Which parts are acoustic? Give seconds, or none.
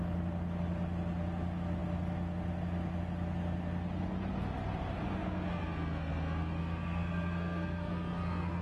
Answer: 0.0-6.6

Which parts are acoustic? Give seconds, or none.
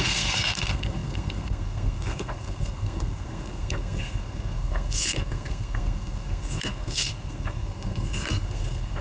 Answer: none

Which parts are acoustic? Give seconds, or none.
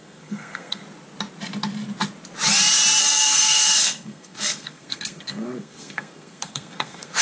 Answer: 0.8-3.0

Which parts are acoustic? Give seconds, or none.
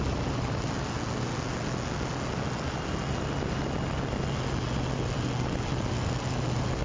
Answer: 0.0-6.8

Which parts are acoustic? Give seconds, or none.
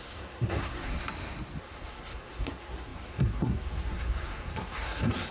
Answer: 1.0-1.6